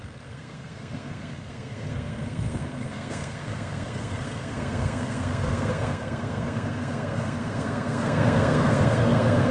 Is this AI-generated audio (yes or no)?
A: yes